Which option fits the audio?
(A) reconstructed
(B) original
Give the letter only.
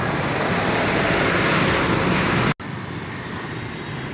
B